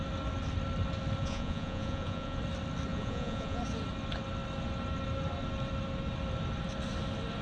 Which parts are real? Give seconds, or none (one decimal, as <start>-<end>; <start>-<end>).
0.0-1.2; 2.4-2.9; 3.6-7.4